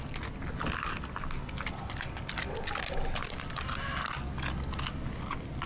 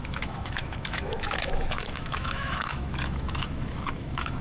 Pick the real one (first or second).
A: first